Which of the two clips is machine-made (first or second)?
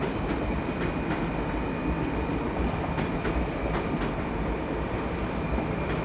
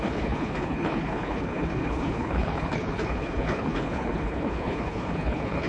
second